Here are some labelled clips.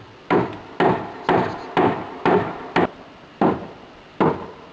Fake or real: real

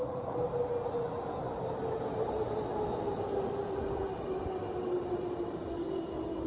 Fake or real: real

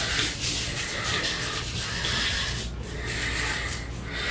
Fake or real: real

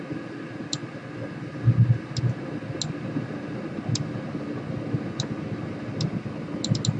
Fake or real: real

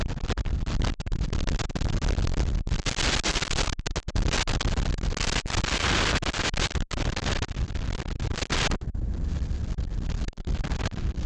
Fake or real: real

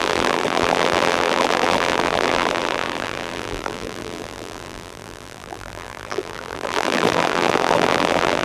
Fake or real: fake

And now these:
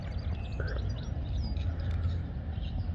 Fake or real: real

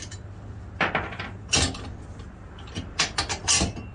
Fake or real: fake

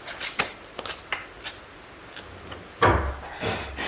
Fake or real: real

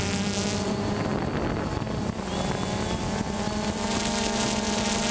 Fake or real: real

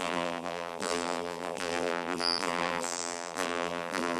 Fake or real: fake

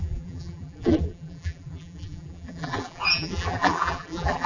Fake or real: fake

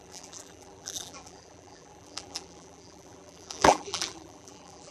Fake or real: fake